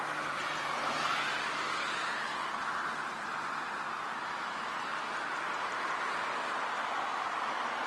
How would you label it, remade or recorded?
recorded